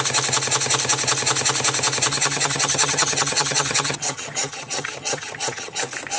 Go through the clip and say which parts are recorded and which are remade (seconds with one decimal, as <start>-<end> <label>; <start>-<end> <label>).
0.0-2.1 recorded; 2.1-5.8 remade; 5.8-6.2 recorded